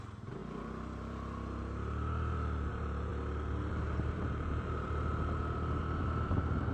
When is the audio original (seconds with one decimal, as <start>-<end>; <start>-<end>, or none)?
3.1-3.7; 5.1-6.0